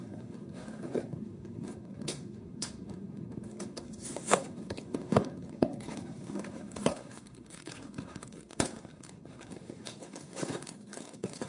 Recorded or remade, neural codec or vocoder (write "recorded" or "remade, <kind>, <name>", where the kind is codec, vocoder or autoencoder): remade, codec, SNAC